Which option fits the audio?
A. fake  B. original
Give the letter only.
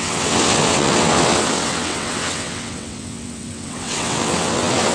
A